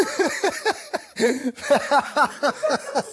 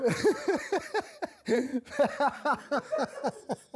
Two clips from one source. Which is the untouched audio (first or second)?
second